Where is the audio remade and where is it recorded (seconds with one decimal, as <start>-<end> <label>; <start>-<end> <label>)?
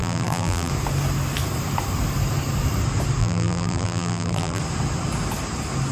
0.0-0.7 remade; 0.7-3.2 recorded; 3.2-4.6 remade; 4.6-5.9 recorded